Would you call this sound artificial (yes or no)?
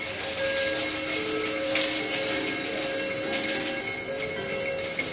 no